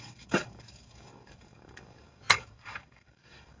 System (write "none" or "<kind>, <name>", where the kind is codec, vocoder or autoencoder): codec, DAC